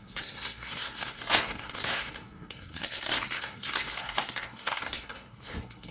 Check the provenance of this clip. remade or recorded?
remade